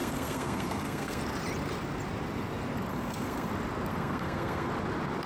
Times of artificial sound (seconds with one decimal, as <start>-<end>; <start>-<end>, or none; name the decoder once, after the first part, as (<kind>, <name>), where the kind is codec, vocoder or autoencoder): 0.0-1.2 (codec, SNAC); 2.9-3.5; 3.9-4.7

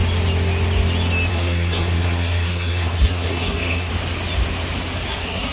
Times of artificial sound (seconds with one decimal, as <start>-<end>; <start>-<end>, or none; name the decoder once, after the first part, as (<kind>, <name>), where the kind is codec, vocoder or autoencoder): 1.3-3.9 (codec, SNAC); 5.1-5.5

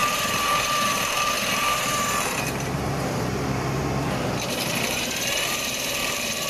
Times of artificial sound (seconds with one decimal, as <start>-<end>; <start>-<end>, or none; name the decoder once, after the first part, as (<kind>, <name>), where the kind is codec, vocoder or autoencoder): 0.0-3.8 (vocoder, BigVGAN v2); 4.5-6.5

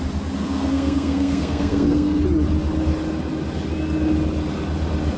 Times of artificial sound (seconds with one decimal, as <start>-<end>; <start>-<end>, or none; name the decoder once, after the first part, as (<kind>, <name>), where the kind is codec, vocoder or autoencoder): 0.4-2.2 (codec, SNAC)